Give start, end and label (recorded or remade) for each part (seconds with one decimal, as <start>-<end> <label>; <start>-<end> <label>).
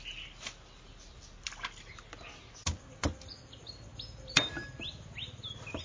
0.0-5.8 recorded